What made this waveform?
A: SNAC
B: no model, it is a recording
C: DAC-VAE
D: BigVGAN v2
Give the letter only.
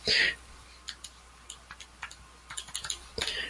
B